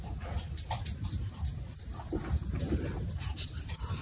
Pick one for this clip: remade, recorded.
remade